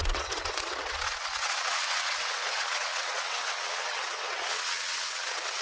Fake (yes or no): yes